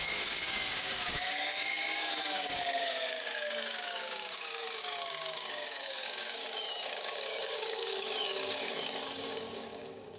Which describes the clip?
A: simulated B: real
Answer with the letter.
A